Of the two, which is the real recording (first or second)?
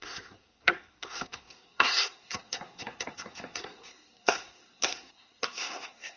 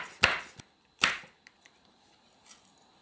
second